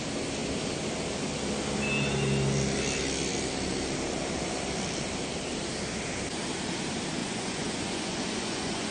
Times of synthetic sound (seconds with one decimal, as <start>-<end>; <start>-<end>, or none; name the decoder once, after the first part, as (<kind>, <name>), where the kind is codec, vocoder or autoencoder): 7.2-8.9 (vocoder, Vocos)